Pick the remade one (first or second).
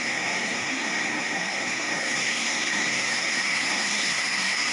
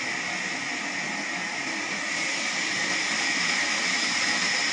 first